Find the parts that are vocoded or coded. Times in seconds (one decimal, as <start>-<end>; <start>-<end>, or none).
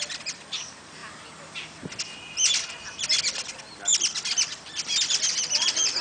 none